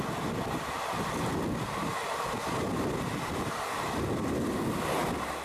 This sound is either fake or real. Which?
real